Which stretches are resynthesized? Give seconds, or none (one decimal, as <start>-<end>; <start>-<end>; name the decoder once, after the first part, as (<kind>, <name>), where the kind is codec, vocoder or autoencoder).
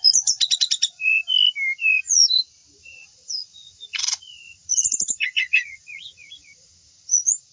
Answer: 0.0-1.2 (vocoder, Vocos); 2.8-7.5